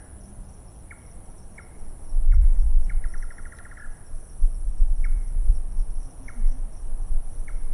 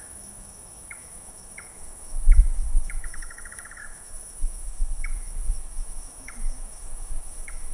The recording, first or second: first